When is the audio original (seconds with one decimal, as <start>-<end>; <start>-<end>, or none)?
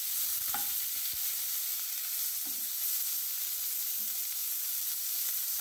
0.0-1.7; 2.2-4.4; 4.9-5.6